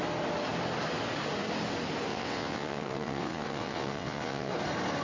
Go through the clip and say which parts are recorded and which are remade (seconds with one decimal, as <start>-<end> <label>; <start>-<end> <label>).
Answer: 0.0-2.1 recorded; 2.1-4.5 remade; 4.5-5.0 recorded

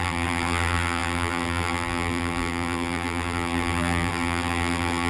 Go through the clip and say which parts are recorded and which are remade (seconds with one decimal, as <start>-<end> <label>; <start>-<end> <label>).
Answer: 0.0-5.1 remade

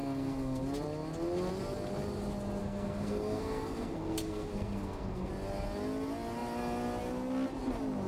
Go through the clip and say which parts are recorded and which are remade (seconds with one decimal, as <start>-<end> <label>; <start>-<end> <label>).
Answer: 0.0-0.6 remade; 0.6-2.6 recorded; 2.6-5.3 remade; 5.3-8.1 recorded

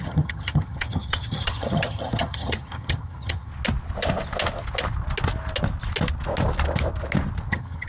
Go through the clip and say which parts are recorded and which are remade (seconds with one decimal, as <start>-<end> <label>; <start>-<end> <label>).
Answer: 0.0-3.5 remade; 3.5-7.5 recorded; 7.5-7.9 remade

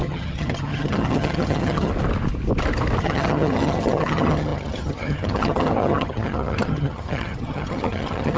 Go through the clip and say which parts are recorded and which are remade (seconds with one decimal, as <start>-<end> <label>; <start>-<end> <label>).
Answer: 0.0-1.9 remade; 1.9-3.0 recorded; 3.0-8.4 remade